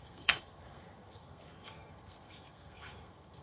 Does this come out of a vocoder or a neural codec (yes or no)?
yes